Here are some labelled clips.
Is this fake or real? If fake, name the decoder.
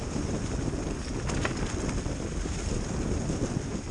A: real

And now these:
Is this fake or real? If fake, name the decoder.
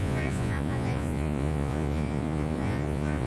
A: fake, vocoder, Vocos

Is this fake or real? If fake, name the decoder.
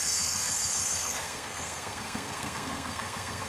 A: fake, codec, SNAC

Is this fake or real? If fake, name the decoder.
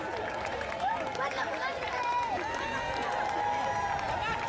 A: real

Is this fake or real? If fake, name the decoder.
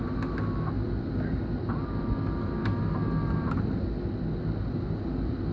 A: real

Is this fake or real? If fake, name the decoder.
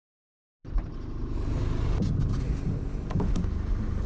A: real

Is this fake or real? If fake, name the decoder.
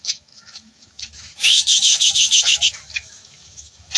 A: fake, autoencoder, DAC-VAE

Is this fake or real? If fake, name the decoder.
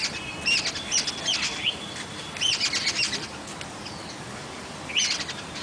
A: real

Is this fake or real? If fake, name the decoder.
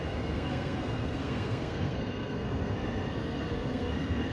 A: fake, codec, SNAC